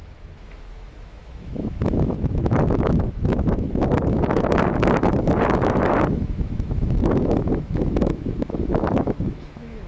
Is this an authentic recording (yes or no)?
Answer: no